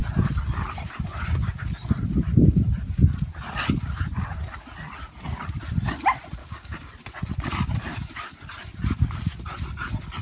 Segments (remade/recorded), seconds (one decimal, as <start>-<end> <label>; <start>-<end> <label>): 0.0-6.4 recorded; 6.4-6.9 remade; 6.9-10.2 recorded